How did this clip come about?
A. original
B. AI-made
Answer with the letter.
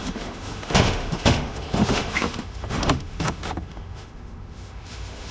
B